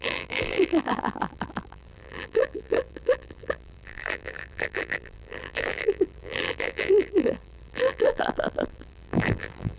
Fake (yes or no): yes